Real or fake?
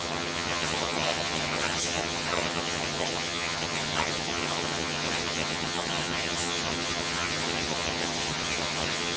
fake